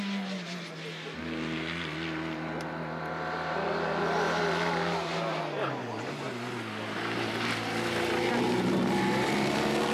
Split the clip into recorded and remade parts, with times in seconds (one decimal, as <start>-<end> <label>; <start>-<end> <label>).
0.0-9.9 recorded